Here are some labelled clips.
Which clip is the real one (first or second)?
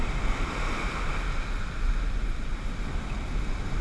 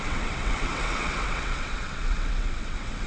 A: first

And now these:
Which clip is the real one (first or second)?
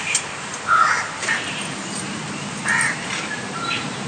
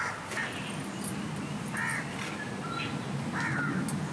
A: second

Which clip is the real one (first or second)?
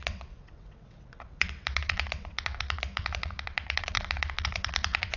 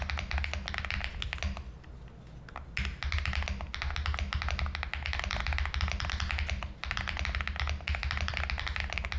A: second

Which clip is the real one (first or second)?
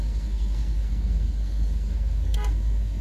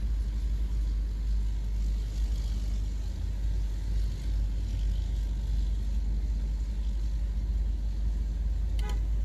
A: second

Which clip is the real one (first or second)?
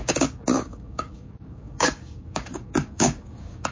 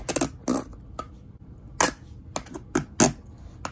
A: second